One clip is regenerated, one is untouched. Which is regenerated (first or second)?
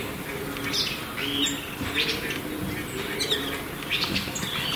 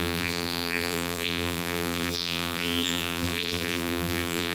second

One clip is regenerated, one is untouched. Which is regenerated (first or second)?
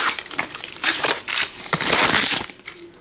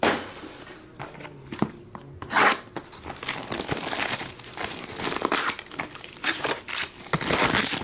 first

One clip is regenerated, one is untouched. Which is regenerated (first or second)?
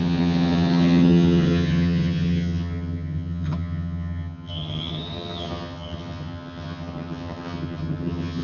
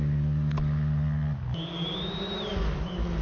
first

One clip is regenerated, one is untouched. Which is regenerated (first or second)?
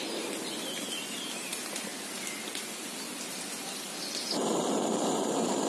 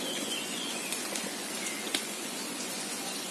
second